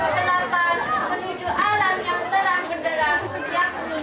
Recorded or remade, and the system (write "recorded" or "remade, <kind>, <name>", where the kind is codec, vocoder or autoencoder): recorded